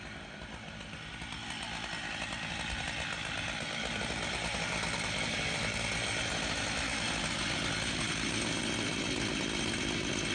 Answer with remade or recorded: recorded